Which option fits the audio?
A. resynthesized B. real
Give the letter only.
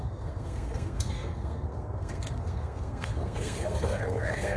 A